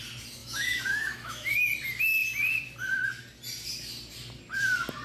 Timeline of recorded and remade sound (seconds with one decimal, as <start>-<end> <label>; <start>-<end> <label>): 0.0-0.4 recorded; 0.4-1.5 remade; 1.5-5.0 recorded